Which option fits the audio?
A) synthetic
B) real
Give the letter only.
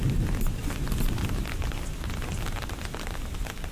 B